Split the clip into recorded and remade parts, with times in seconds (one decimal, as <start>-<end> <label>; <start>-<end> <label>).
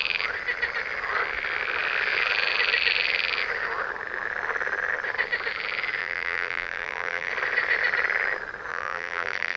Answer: 0.0-6.0 recorded; 6.0-7.3 remade; 7.3-8.7 recorded; 8.7-9.6 remade